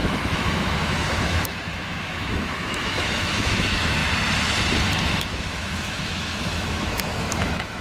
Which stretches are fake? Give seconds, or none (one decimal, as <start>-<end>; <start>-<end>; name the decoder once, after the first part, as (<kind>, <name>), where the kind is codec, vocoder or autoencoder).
0.0-4.0 (autoencoder, DAC-VAE); 5.0-7.8